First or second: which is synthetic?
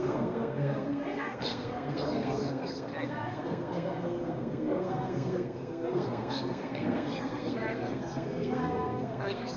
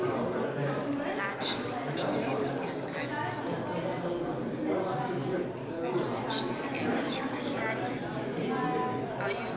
first